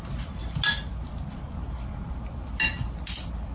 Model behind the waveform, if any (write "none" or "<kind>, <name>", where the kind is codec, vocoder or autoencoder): none